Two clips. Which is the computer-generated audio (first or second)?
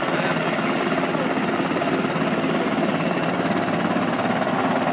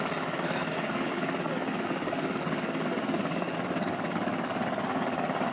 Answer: second